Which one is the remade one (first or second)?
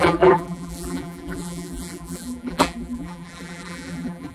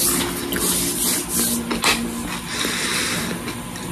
first